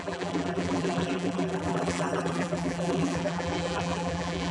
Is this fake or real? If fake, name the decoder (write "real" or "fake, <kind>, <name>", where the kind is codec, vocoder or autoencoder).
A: fake, vocoder, BigVGAN v2